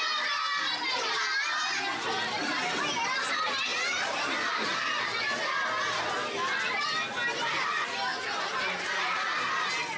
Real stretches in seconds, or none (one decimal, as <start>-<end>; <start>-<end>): 0.0-3.7; 5.0-10.0